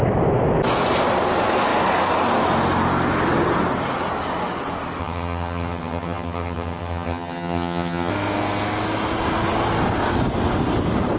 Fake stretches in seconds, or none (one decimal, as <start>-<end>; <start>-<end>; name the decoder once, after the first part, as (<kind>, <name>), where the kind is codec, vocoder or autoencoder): 5.0-8.1 (vocoder, HiFi-GAN)